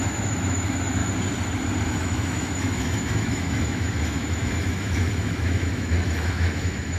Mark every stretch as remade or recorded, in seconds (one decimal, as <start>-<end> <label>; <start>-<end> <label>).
0.0-1.0 remade; 1.0-1.8 recorded; 1.8-7.0 remade